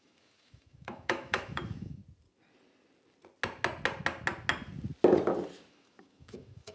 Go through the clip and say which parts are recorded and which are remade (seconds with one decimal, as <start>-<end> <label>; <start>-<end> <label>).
0.0-2.0 remade; 2.0-5.7 recorded; 5.7-6.7 remade